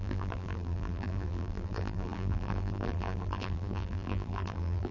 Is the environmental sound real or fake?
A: fake